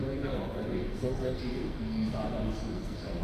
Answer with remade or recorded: remade